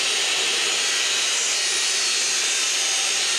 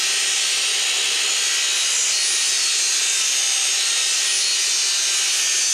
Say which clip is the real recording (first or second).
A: second